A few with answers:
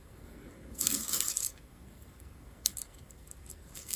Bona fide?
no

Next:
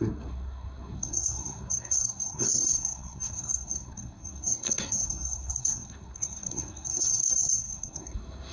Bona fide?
no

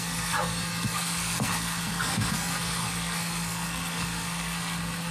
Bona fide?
no